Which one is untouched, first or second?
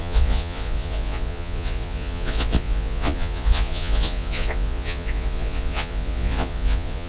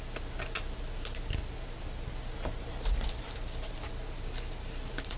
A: second